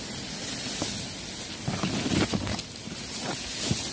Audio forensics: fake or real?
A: real